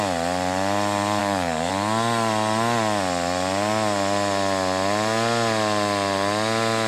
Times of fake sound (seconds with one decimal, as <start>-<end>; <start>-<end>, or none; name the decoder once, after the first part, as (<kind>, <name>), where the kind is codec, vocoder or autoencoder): 1.2-1.7 (codec, DAC)

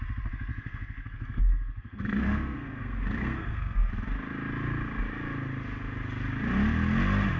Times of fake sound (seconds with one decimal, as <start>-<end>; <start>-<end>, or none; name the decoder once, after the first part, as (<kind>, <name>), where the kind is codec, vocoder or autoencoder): 0.5-3.9 (codec, SNAC)

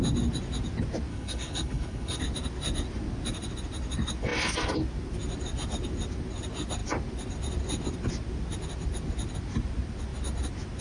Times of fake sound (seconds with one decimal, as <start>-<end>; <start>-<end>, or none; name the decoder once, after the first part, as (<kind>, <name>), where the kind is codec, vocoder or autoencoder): 1.1-2.2 (codec, HILCodec)